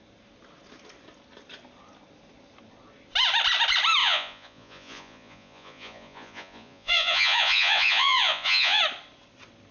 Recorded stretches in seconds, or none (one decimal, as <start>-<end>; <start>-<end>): 0.0-4.0; 8.8-9.7